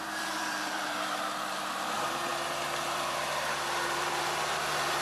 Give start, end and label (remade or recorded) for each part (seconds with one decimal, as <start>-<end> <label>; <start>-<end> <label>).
0.0-5.0 remade

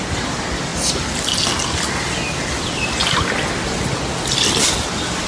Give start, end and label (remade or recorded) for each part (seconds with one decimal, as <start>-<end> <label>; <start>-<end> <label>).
0.0-0.7 remade; 0.7-2.4 recorded; 2.4-3.0 remade; 3.0-4.3 recorded; 4.3-5.3 remade

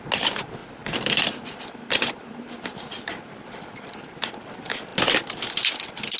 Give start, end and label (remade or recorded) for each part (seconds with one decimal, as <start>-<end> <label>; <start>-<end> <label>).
0.0-0.6 recorded; 0.6-4.3 remade; 4.3-6.2 recorded